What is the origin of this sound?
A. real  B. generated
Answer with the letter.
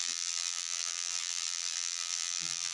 B